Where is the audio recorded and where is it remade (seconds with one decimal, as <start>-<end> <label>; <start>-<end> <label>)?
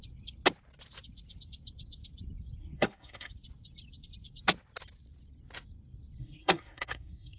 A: 0.0-2.6 recorded; 2.6-3.3 remade; 3.3-6.2 recorded; 6.2-7.4 remade